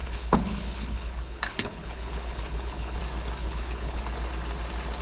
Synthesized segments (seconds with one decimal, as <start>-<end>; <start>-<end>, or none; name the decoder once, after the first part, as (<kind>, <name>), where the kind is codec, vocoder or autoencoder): 0.0-3.0 (codec, HILCodec); 3.4-4.0